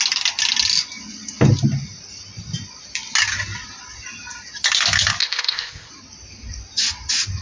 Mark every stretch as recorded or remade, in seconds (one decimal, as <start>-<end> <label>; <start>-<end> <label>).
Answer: 0.0-5.2 recorded; 5.2-5.9 remade; 5.9-7.4 recorded